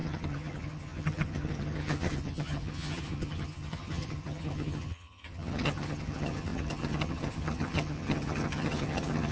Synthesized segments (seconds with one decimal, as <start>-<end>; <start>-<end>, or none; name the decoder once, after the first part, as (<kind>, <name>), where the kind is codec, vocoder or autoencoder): 0.0-9.3 (vocoder, HiFi-GAN)

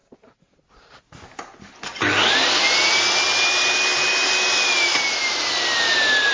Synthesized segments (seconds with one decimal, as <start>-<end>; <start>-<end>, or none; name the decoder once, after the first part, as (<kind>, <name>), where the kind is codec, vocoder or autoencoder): none

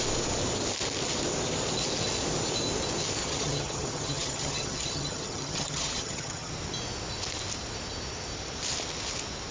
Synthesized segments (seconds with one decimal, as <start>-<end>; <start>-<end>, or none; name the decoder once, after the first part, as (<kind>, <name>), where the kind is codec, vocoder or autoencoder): 3.2-6.5 (vocoder, HiFi-GAN)

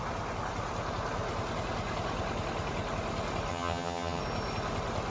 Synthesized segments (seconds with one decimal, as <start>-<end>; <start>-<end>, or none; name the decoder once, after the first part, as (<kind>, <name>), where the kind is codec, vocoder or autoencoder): 3.5-4.2 (vocoder, HiFi-GAN)

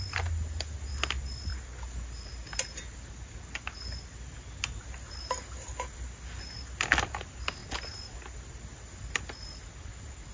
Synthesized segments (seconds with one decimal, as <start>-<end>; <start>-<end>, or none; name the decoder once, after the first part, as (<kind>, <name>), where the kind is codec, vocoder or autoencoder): none